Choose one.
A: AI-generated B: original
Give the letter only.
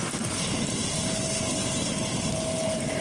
B